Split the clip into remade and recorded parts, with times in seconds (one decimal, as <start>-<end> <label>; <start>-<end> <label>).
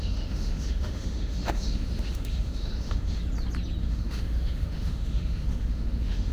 0.0-3.2 remade; 3.2-3.8 recorded; 3.8-6.3 remade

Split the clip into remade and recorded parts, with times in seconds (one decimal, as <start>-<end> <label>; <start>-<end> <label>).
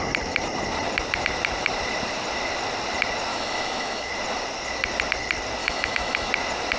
0.0-3.3 recorded; 3.3-4.1 remade; 4.1-5.6 recorded; 5.6-6.3 remade; 6.3-6.8 recorded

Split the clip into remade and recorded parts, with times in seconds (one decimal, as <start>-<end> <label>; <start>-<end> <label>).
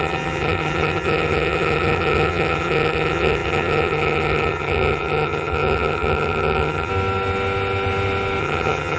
0.0-6.9 remade; 6.9-8.4 recorded; 8.4-9.0 remade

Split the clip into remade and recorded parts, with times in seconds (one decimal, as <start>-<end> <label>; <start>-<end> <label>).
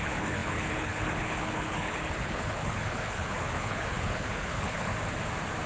0.0-4.9 remade; 4.9-5.7 recorded